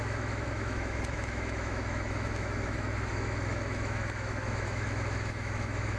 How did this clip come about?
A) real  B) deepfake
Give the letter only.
B